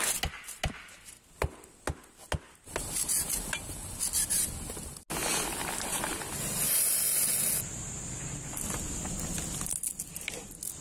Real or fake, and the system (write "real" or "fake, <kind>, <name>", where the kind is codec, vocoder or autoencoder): real